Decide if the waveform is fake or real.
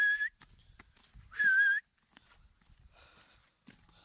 real